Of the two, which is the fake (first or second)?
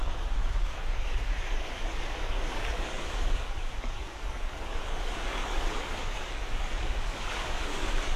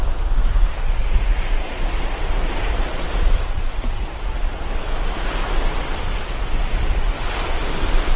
first